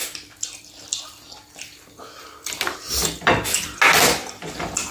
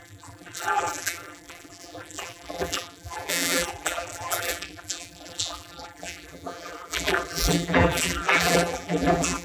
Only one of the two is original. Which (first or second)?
first